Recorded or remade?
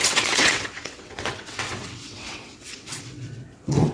remade